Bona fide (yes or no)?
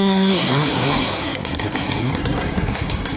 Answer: no